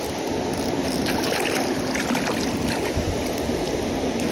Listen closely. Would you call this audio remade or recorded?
recorded